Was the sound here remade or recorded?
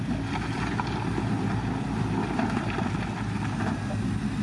recorded